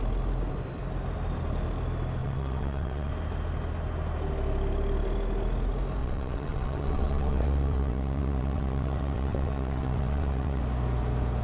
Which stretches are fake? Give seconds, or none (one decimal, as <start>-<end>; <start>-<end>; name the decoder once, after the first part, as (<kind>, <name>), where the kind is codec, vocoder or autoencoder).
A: 2.2-3.1 (vocoder, WaveNeXt); 6.0-10.6